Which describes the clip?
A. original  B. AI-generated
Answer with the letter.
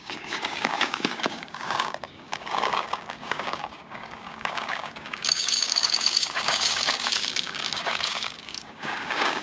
B